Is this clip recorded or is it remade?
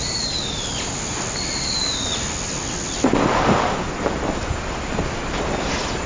recorded